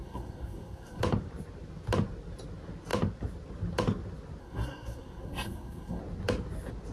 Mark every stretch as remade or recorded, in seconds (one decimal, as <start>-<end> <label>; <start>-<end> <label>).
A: 0.0-1.0 remade; 1.0-4.4 recorded; 4.4-6.0 remade; 6.0-6.9 recorded